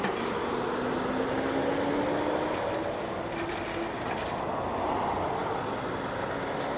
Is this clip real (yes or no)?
yes